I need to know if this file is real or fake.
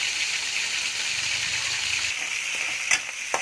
real